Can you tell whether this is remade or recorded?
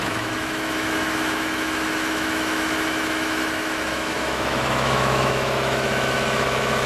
remade